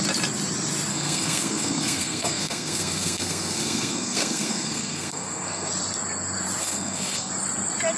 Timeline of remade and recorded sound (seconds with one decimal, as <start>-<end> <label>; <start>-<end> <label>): 0.0-0.9 recorded; 0.9-5.7 remade; 5.7-6.6 recorded; 6.6-7.3 remade; 7.3-8.0 recorded